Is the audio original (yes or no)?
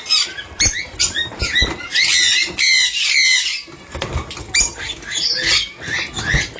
yes